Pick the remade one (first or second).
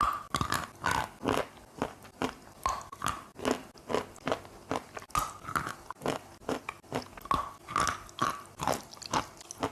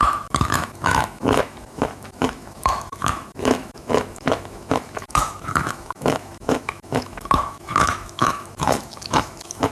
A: second